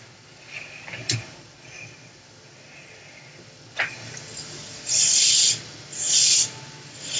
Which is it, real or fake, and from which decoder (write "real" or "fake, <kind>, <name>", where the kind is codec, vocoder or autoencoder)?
real